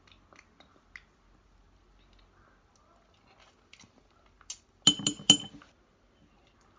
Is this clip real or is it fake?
real